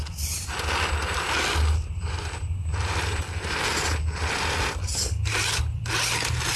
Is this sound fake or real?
real